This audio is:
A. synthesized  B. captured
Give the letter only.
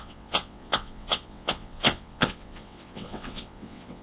A